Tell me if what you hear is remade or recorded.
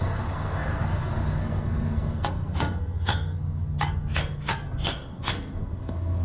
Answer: remade